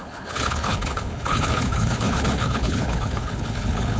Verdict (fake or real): fake